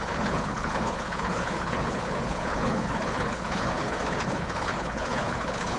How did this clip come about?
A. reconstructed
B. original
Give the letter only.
A